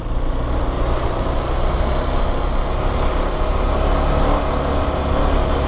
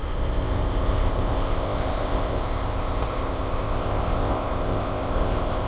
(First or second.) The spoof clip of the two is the second